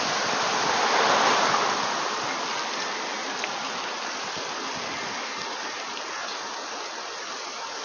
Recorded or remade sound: recorded